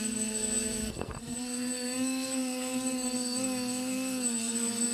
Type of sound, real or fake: fake